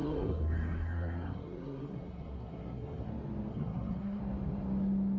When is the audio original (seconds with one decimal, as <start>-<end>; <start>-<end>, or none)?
3.1-3.5; 4.2-5.2